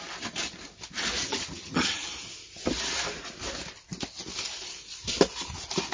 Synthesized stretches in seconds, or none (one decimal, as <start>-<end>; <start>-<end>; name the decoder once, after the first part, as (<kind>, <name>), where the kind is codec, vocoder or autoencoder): 1.2-2.1 (vocoder, HiFi-GAN)